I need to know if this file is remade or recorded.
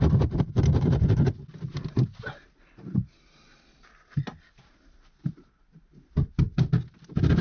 recorded